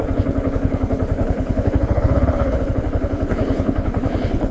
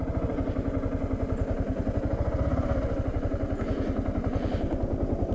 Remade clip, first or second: first